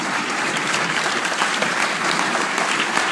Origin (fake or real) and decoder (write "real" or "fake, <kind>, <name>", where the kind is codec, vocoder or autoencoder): fake, vocoder, BigVGAN v2